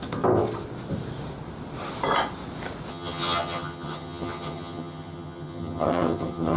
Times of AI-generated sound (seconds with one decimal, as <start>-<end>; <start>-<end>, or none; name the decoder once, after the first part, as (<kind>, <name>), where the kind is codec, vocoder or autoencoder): 2.9-6.6 (vocoder, HiFi-GAN)